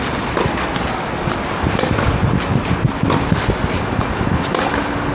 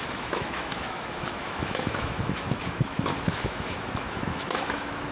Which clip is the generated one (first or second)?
second